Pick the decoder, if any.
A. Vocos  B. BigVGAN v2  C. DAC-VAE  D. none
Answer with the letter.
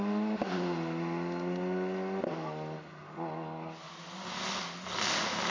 D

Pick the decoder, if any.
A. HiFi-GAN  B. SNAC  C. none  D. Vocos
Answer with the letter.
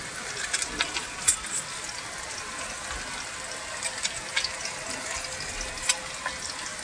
C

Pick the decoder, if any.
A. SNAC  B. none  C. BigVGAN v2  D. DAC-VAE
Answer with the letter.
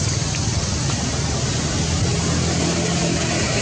B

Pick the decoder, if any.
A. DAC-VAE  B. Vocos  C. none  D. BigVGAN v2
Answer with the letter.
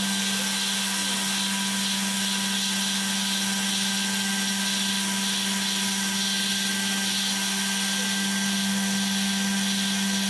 C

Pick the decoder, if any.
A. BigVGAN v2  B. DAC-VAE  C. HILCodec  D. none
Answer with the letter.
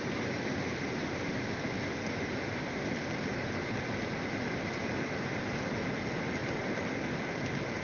D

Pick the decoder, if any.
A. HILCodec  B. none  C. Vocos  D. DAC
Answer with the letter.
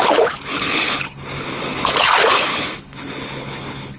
A